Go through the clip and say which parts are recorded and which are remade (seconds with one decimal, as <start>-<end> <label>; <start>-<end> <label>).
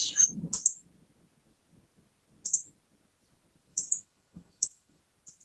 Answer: 0.0-3.7 recorded; 3.7-5.0 remade; 5.0-5.4 recorded